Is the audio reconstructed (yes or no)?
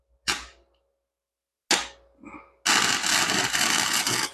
no